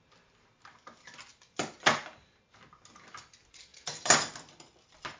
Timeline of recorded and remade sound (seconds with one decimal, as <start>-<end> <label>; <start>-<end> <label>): 0.0-5.2 recorded